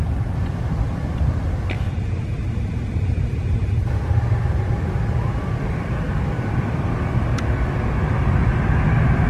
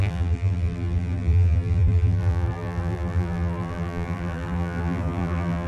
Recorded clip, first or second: first